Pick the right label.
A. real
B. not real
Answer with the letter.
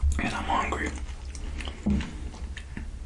A